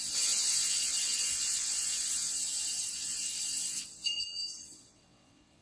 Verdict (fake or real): fake